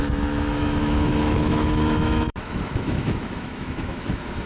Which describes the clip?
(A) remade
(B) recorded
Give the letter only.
A